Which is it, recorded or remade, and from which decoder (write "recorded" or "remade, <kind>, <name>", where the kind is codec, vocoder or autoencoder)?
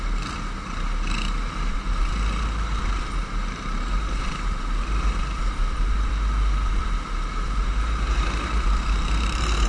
remade, vocoder, BigVGAN v2